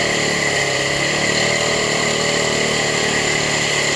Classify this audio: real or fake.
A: fake